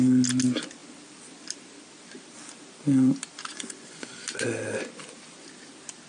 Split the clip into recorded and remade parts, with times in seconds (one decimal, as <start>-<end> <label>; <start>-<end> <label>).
0.0-3.5 recorded; 3.5-4.1 remade; 4.1-6.1 recorded